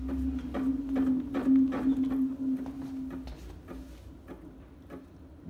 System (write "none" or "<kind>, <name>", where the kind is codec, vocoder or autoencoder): none